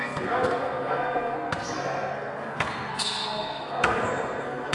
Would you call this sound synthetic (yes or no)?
yes